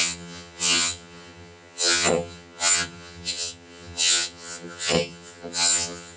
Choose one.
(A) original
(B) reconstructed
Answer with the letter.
B